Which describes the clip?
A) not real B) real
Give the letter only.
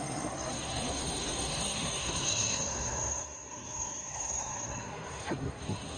A